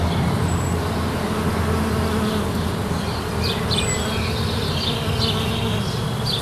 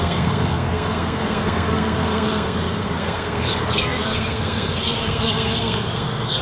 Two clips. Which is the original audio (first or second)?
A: first